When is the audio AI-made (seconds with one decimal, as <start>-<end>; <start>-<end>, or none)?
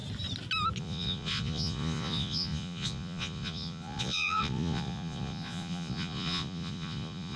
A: 0.8-7.4